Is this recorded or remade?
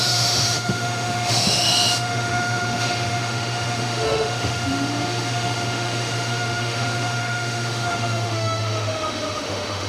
remade